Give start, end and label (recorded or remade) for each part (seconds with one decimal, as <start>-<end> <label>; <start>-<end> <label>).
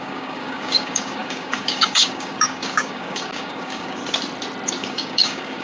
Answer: 0.0-4.0 remade; 4.0-4.8 recorded; 4.8-5.6 remade